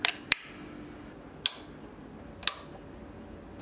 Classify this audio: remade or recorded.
recorded